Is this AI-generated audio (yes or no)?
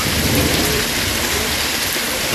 yes